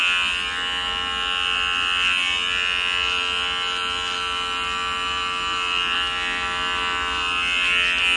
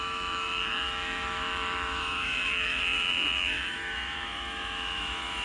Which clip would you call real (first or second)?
first